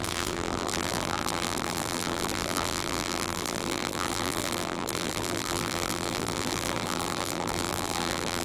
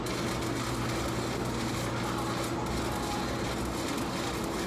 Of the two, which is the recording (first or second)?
second